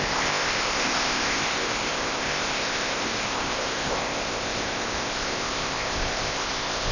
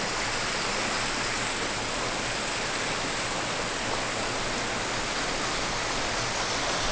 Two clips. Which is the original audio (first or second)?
second